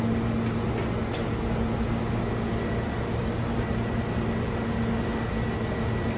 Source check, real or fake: real